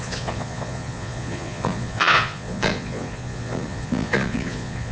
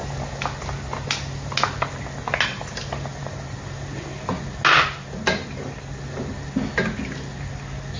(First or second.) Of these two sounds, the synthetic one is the first